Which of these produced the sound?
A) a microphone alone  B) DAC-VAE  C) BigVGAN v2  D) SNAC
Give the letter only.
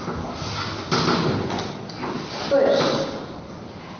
A